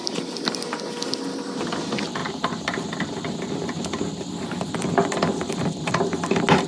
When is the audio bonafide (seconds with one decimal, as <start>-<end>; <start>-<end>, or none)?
0.0-6.7

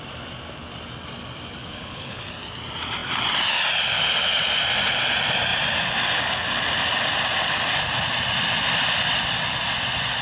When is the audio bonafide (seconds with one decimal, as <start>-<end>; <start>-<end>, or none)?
0.0-1.6; 2.2-10.2

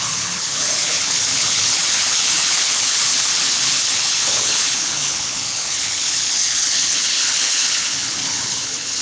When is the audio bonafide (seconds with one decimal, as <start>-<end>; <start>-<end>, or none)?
none

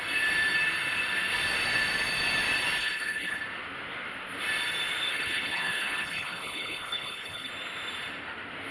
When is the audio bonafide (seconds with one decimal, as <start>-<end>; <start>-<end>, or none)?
0.0-2.8; 3.4-5.1; 7.5-8.7

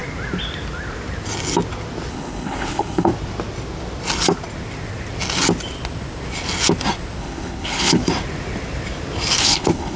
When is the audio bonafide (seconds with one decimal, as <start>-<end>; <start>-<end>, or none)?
0.0-2.1; 3.1-7.2; 8.0-9.4

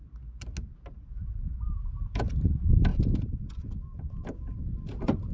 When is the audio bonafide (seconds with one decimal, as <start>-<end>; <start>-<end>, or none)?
0.0-5.3